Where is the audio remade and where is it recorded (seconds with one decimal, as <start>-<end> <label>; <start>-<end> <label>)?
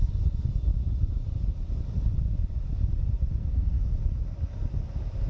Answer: 0.0-3.4 recorded; 3.4-4.0 remade; 4.0-5.3 recorded